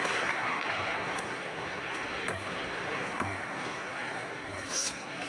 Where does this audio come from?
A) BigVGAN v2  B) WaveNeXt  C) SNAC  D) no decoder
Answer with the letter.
C